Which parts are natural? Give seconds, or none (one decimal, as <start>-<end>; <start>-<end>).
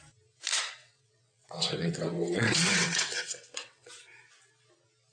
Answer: 0.0-0.8; 3.9-5.1